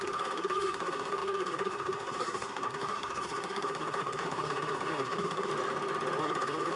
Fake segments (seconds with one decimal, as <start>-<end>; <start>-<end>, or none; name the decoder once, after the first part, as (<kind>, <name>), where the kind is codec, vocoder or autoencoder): 0.0-5.5 (codec, SNAC); 6.2-6.8

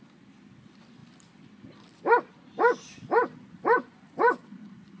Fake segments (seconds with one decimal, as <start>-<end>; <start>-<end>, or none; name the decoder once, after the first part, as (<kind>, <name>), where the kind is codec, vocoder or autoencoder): none

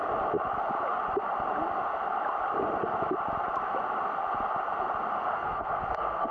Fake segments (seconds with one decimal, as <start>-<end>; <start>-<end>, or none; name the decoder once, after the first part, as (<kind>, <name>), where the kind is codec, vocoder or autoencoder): 5.3-6.3 (codec, SNAC)

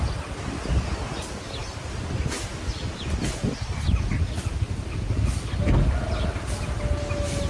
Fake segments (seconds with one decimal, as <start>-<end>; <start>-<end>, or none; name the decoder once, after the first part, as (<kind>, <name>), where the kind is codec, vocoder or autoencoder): none

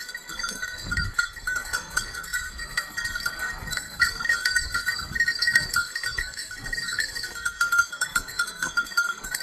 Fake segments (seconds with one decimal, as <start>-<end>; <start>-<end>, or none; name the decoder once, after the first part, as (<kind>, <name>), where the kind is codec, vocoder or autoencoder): 0.0-9.4 (codec, SNAC)

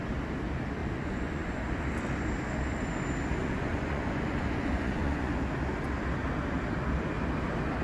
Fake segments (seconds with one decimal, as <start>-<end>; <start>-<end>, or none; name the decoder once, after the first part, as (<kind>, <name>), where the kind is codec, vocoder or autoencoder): 0.8-1.8 (vocoder, Vocos); 3.4-5.3

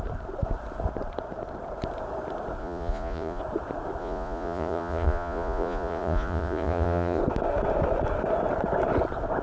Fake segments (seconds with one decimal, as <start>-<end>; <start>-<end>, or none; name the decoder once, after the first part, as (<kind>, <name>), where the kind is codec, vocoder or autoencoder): 2.6-3.4 (vocoder, Vocos); 4.0-7.2